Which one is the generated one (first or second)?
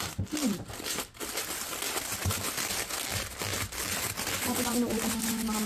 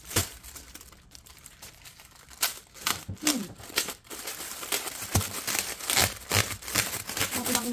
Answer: second